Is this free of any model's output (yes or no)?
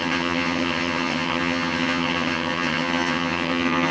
no